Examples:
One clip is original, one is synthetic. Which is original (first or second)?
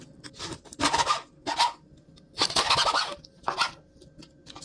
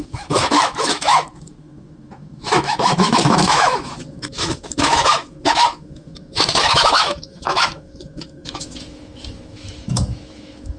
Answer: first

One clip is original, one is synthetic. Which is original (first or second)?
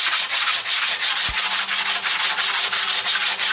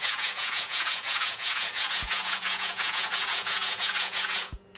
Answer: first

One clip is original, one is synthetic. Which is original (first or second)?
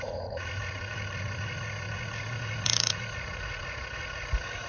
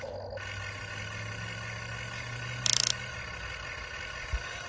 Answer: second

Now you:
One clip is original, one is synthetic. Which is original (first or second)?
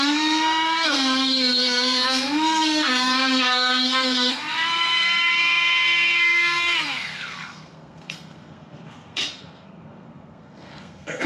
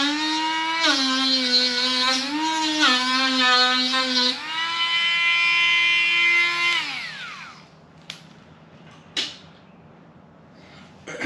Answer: second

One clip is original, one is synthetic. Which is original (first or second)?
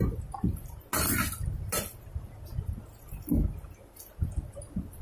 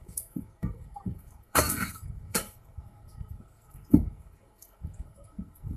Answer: first